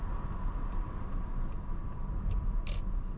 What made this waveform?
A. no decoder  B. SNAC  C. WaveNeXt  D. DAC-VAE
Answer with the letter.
A